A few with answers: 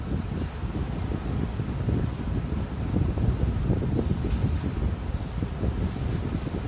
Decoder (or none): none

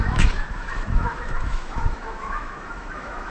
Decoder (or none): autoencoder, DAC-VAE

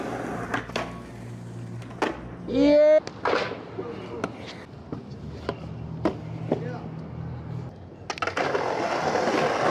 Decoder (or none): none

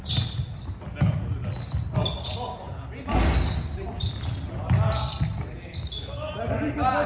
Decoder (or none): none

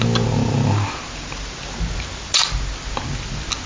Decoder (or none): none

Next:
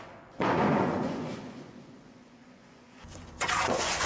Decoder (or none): vocoder, Vocos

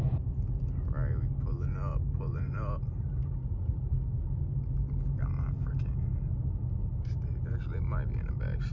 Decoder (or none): none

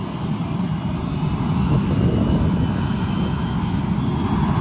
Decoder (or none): none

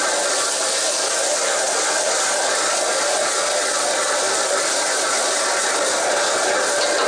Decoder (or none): none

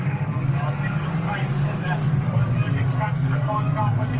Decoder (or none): codec, DAC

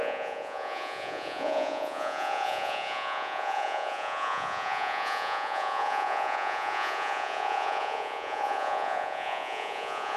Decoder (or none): vocoder, Vocos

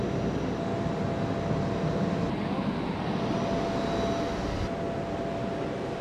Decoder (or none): none